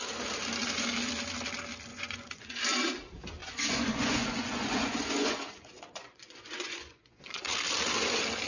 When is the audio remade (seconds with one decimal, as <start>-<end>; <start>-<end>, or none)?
1.9-2.6; 3.4-7.5